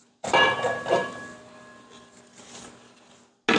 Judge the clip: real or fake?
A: real